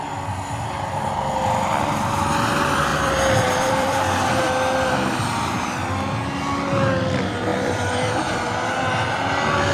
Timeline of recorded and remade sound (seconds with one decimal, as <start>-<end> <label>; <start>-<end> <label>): 0.0-2.9 recorded; 2.9-4.4 remade; 4.4-7.5 recorded; 7.5-8.4 remade; 8.4-9.7 recorded